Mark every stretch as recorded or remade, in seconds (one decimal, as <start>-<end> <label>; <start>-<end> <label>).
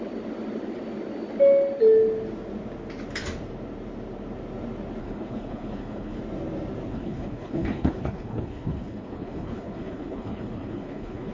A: 0.0-5.0 recorded; 5.0-6.2 remade; 6.2-6.9 recorded; 6.9-11.3 remade